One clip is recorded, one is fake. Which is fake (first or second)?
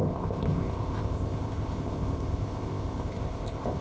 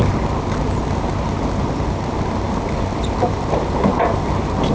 first